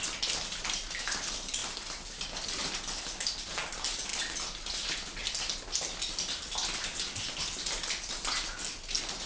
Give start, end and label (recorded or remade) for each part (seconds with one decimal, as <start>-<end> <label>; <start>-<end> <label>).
0.0-9.3 recorded